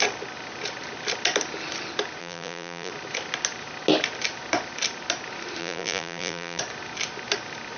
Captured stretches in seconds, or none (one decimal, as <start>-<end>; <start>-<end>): 0.0-2.2; 2.9-5.6; 6.6-7.8

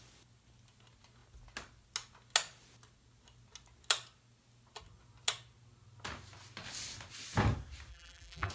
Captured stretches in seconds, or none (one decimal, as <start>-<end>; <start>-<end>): 0.0-7.9

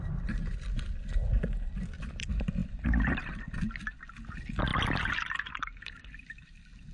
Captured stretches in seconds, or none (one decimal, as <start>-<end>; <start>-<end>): 0.0-6.9

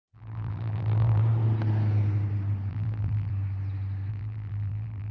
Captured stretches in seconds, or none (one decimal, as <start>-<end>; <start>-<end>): 1.2-2.7; 3.3-4.1

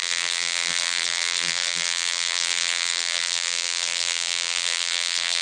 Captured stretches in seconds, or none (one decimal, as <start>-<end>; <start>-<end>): none

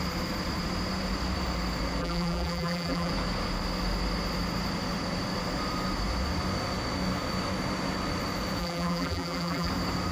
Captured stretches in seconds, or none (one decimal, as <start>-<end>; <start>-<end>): 0.0-2.0; 3.1-8.6; 9.7-10.1